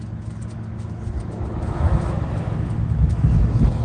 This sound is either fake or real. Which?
fake